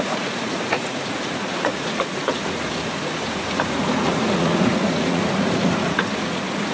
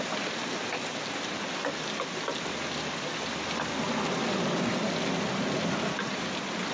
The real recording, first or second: second